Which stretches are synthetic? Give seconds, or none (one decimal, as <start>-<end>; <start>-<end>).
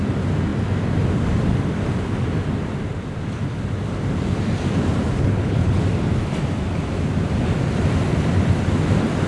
5.2-5.8